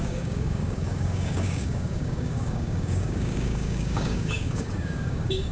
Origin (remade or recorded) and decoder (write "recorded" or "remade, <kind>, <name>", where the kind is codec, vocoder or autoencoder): remade, codec, DAC